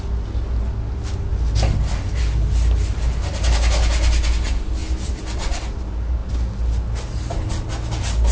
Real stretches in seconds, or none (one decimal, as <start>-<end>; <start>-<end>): 0.0-8.3